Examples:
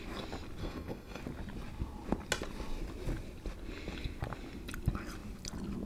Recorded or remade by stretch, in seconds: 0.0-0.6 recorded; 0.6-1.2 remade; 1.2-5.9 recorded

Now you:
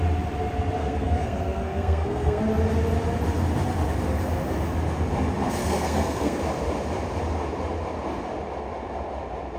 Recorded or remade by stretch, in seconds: 0.0-0.8 recorded; 0.8-2.4 remade; 2.4-5.6 recorded; 5.6-6.4 remade; 6.4-9.6 recorded

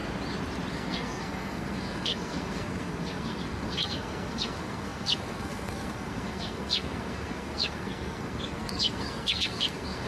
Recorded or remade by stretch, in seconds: 0.0-0.7 recorded; 0.7-10.1 remade

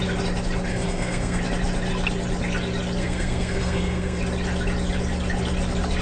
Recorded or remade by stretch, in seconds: 0.0-0.7 recorded; 0.7-1.4 remade; 1.4-3.0 recorded; 3.0-4.2 remade; 4.2-6.0 recorded

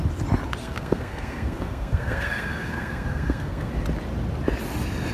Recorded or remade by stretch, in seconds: 0.0-0.6 recorded; 0.6-3.7 remade; 3.7-5.1 recorded

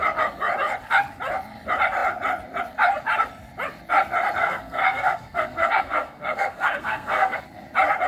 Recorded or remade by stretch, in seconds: 0.0-4.4 recorded; 4.4-7.4 remade; 7.4-8.1 recorded

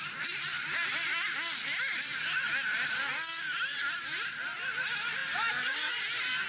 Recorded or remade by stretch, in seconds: 0.0-6.5 recorded

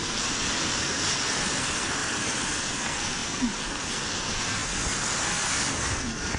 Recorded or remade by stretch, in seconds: 0.0-6.4 remade